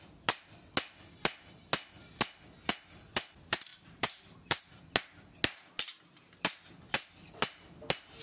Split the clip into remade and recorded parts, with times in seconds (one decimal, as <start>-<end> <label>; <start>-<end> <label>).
0.0-3.7 recorded; 3.7-4.6 remade; 4.6-8.2 recorded